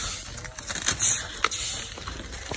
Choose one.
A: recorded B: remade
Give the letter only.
A